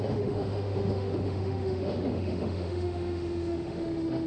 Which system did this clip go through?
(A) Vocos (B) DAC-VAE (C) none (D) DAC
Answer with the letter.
B